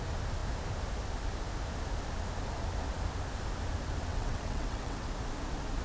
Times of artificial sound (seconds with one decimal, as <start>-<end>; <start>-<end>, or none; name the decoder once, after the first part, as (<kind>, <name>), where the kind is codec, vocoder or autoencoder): 4.1-5.1 (vocoder, WaveNeXt)